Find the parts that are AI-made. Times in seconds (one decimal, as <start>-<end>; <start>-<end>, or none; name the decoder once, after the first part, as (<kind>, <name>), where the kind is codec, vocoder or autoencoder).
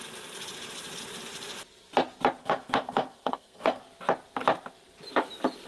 2.4-3.8 (codec, SNAC)